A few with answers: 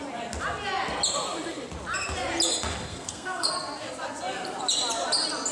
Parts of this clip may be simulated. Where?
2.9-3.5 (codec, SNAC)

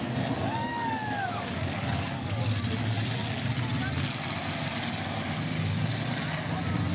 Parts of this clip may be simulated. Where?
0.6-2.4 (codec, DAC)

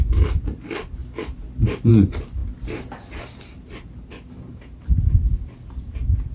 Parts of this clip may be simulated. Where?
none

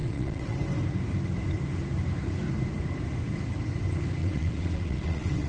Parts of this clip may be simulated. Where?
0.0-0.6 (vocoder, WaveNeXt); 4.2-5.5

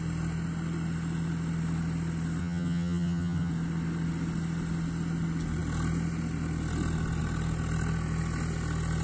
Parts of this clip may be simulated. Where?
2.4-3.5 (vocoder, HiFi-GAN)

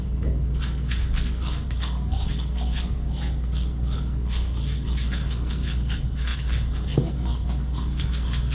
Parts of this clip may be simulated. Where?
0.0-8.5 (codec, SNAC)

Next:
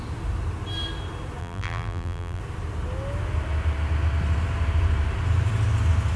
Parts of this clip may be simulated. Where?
1.4-2.4 (vocoder, BigVGAN v2)